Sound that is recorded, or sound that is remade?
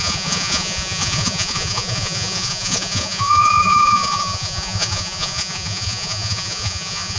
remade